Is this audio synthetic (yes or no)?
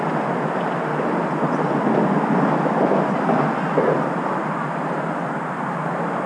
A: no